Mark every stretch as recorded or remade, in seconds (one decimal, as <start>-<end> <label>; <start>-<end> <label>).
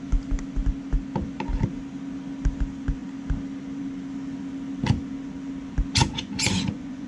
0.0-6.0 recorded; 6.0-7.1 remade